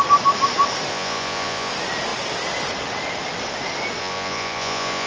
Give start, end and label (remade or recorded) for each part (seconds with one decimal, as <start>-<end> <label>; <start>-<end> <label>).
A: 0.0-0.9 recorded; 0.9-1.7 remade; 1.7-4.0 recorded; 4.0-5.1 remade